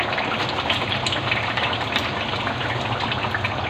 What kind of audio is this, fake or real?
real